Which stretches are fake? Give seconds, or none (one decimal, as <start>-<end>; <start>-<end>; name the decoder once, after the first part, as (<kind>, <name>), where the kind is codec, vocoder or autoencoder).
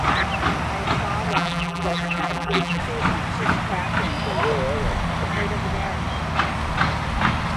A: 1.3-2.8 (vocoder, BigVGAN v2)